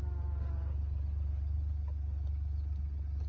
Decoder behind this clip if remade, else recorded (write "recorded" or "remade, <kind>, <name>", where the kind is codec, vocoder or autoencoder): recorded